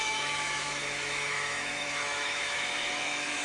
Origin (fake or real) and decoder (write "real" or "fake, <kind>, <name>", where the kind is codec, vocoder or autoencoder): fake, autoencoder, DAC-VAE